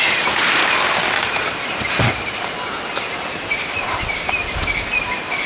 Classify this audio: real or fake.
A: real